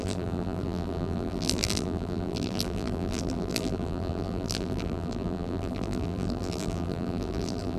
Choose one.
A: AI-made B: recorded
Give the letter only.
A